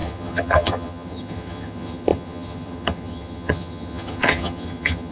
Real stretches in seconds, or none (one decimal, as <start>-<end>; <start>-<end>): none